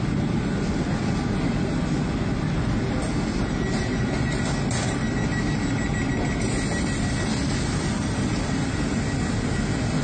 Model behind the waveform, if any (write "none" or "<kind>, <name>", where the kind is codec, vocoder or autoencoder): none